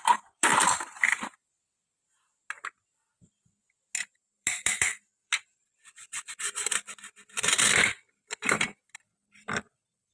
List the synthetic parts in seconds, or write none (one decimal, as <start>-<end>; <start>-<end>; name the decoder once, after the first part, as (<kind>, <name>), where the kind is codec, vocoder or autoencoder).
0.0-0.5 (vocoder, BigVGAN v2); 4.1-10.1